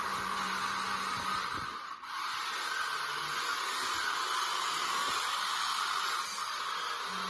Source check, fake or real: real